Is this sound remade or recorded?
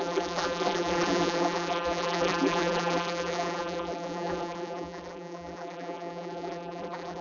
remade